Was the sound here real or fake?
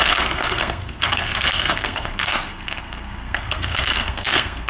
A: fake